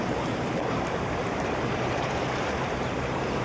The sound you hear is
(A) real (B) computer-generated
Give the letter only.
B